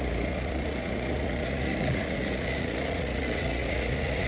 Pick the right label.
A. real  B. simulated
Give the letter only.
B